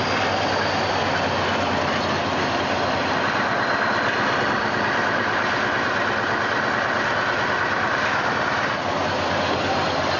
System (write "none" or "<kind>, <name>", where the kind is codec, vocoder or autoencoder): none